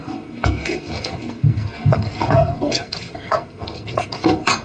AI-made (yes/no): yes